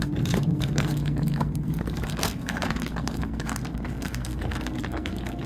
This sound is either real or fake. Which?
fake